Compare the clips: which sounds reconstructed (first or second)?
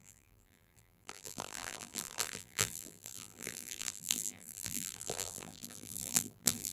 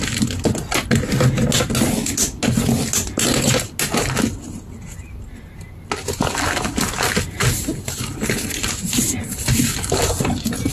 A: first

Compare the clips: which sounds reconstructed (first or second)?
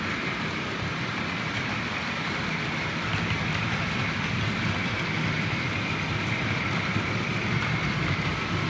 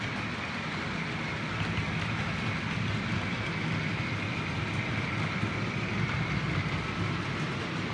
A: first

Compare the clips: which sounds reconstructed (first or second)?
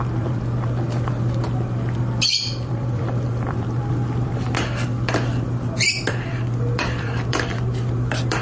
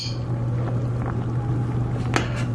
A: first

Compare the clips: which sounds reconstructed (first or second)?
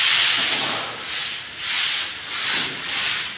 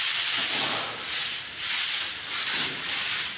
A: second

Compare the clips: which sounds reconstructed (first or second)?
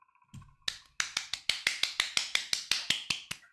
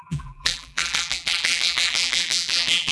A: second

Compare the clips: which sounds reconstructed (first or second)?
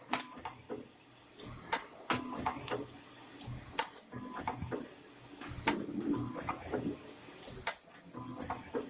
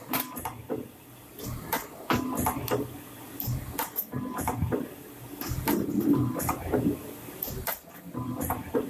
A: second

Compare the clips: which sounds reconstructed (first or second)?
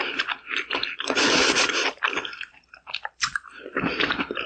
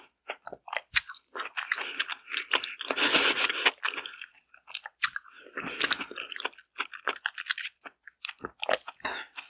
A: first